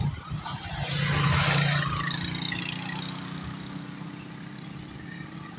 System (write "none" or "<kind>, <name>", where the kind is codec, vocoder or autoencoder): none